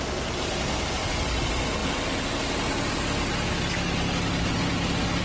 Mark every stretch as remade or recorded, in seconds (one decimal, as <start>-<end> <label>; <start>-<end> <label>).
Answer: 0.0-5.2 recorded